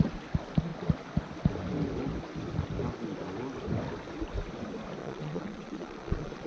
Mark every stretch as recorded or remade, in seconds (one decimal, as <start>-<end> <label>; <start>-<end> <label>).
0.0-5.0 recorded; 5.0-6.5 remade